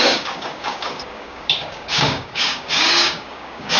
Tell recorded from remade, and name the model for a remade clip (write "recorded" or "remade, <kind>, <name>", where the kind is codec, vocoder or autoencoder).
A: remade, codec, DAC